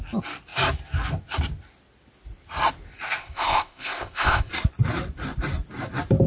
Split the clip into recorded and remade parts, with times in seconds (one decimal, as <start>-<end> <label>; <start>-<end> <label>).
0.0-3.2 recorded; 3.2-4.5 remade; 4.5-6.3 recorded